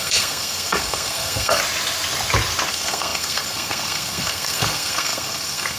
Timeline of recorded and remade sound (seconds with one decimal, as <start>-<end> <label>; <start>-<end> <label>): 0.0-1.6 remade; 1.6-2.7 recorded; 2.7-5.8 remade

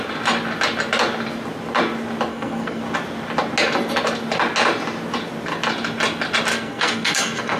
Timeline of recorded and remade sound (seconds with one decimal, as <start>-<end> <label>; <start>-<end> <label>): 0.0-2.3 recorded; 2.3-2.8 remade; 2.8-6.5 recorded; 6.5-7.6 remade

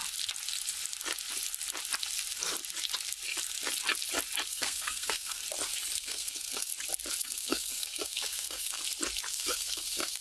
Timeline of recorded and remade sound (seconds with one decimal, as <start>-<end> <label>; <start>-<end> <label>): 0.0-4.5 recorded; 4.5-5.4 remade; 5.4-6.0 recorded; 6.0-6.7 remade; 6.7-7.2 recorded; 7.2-8.8 remade; 8.8-9.3 recorded; 9.3-10.2 remade

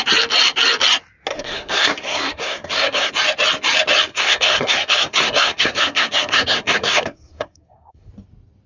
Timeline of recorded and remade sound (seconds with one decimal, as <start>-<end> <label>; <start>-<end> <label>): 0.0-1.3 recorded; 1.3-3.1 remade; 3.1-4.1 recorded; 4.1-8.1 remade; 8.1-8.7 recorded